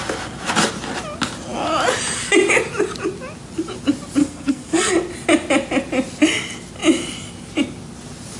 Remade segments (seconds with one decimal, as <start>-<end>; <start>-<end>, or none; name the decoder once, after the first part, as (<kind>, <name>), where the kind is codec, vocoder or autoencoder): 4.2-4.9 (codec, SNAC)